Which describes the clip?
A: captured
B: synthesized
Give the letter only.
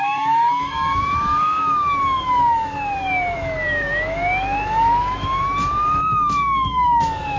B